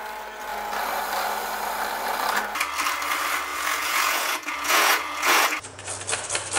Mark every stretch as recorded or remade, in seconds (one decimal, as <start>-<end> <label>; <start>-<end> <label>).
0.0-3.5 recorded; 3.5-5.8 remade; 5.8-6.6 recorded